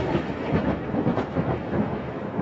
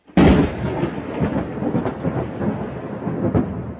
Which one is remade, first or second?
first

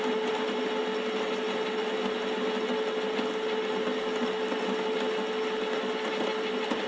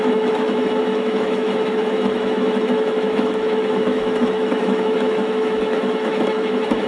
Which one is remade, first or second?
second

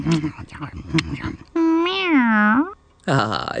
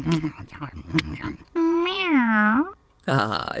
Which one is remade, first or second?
second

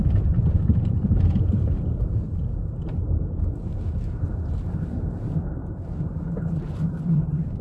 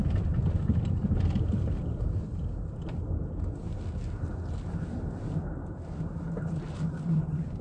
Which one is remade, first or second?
first